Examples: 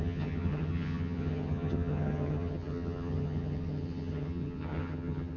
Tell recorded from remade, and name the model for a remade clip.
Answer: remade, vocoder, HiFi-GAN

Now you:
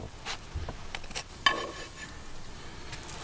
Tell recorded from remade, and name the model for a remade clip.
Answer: recorded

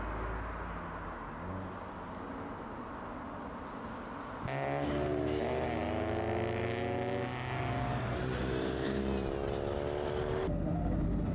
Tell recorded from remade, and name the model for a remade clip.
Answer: recorded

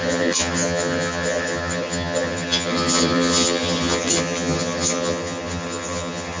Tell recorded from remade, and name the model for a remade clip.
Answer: remade, vocoder, HiFi-GAN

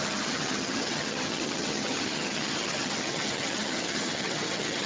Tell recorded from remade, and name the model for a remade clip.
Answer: remade, vocoder, HiFi-GAN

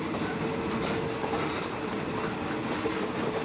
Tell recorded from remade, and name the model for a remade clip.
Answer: recorded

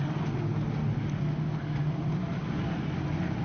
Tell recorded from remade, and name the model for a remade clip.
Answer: recorded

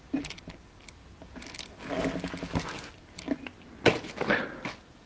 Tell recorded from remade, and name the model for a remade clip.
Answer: recorded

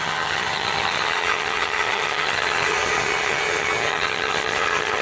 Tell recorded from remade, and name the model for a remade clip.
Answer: remade, vocoder, HiFi-GAN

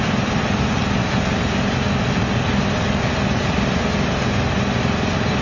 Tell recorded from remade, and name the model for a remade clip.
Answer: recorded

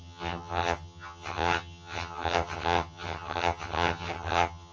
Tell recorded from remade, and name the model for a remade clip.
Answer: remade, vocoder, HiFi-GAN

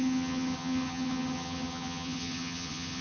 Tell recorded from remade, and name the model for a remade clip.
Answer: remade, vocoder, HiFi-GAN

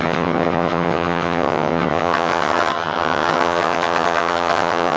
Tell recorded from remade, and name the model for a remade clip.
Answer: remade, vocoder, HiFi-GAN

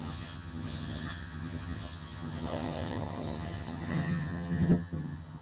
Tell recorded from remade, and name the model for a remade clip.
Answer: remade, vocoder, HiFi-GAN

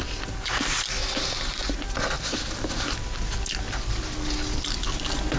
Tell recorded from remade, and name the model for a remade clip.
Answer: recorded